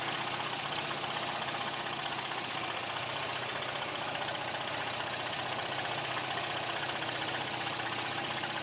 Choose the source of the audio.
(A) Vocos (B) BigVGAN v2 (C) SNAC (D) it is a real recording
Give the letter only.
A